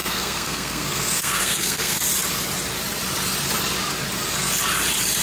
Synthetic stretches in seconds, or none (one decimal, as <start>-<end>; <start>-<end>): 0.0-2.0